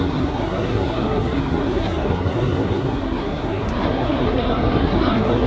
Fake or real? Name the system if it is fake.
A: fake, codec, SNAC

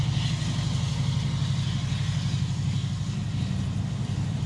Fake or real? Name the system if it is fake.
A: real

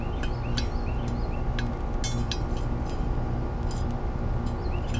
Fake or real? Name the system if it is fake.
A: real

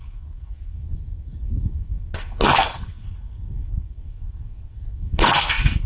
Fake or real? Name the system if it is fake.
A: fake, codec, SNAC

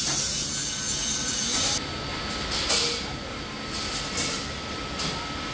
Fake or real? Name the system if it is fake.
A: real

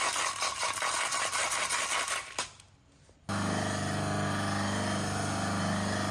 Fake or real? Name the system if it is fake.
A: real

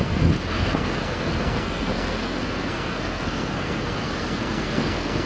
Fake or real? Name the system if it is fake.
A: fake, codec, SNAC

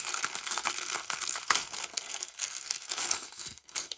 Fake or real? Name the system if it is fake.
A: fake, codec, SNAC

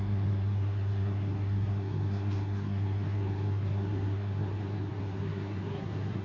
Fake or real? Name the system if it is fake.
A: fake, codec, SNAC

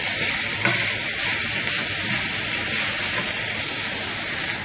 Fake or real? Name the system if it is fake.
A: real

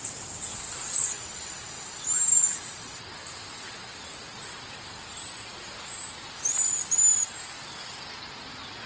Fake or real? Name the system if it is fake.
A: real